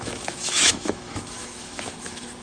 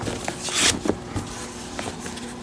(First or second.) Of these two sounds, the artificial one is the first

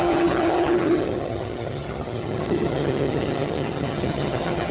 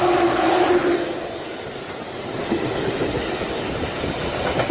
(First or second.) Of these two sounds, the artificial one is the first